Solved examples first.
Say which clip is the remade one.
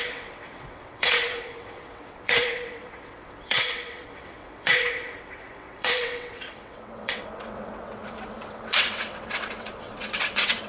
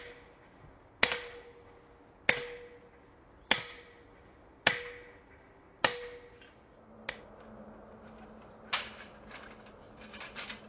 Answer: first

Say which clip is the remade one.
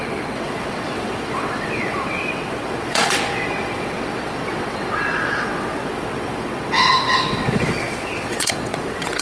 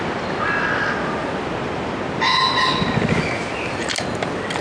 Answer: first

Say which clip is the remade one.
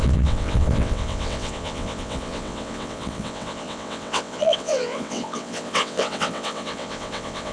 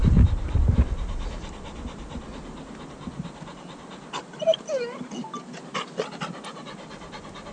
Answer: first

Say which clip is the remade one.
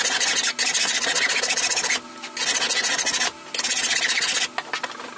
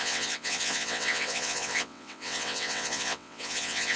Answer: second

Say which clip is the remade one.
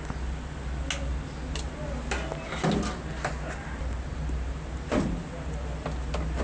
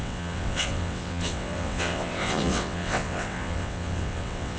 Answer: second